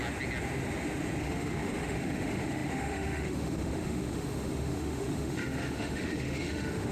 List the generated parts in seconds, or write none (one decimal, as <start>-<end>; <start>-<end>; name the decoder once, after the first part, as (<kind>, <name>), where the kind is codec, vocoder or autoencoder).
1.2-6.9 (autoencoder, DAC-VAE)